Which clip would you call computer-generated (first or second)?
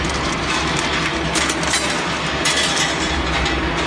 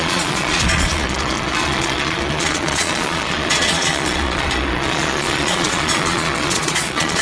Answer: second